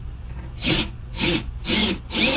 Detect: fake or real fake